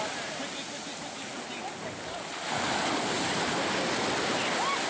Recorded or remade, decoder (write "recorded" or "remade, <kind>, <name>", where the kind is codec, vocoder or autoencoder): recorded